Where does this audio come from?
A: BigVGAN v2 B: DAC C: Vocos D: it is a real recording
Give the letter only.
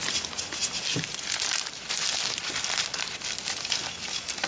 D